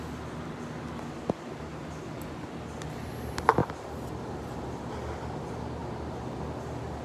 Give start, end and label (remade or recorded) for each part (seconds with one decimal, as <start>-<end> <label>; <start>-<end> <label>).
0.0-7.0 recorded

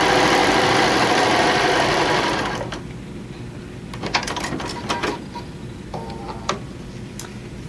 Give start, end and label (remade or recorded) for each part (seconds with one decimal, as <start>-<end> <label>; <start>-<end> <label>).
0.0-7.7 recorded

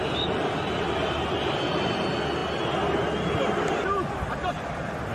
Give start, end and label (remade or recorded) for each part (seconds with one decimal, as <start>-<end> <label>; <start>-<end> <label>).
0.0-5.1 recorded

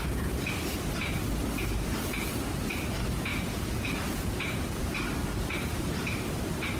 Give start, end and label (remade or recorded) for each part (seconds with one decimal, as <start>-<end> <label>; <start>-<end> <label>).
0.0-0.5 remade; 0.5-3.3 recorded; 3.3-4.8 remade; 4.8-6.8 recorded